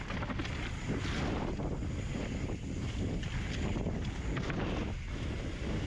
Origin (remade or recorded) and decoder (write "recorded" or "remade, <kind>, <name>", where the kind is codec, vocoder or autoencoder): recorded